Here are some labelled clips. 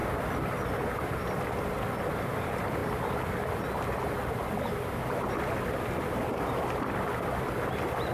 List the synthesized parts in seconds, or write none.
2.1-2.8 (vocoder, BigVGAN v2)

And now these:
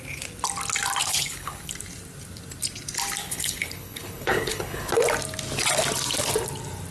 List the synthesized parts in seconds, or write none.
1.0-1.7 (codec, HILCodec); 3.2-4.9

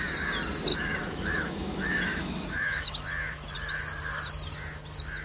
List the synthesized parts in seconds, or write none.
0.7-3.0 (autoencoder, DAC-VAE)

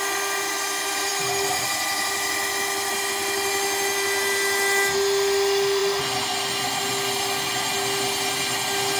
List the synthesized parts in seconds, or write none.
none